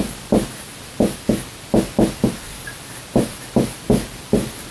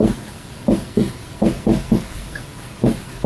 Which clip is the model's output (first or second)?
second